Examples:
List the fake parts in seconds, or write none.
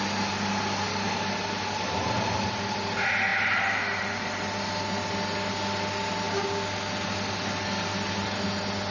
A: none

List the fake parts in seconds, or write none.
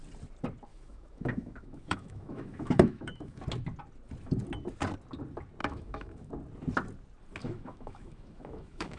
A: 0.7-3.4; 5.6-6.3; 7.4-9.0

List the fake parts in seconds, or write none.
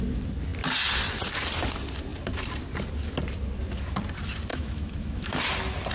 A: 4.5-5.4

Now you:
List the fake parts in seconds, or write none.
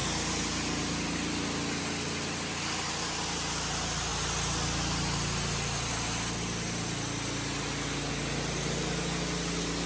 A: none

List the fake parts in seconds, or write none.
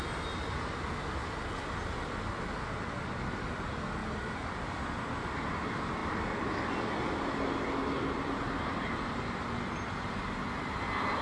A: none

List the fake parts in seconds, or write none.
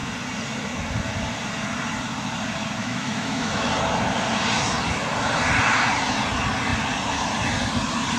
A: 2.8-3.7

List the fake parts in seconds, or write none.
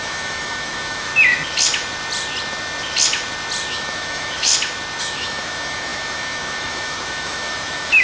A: 0.0-1.1; 3.7-4.5; 5.0-8.0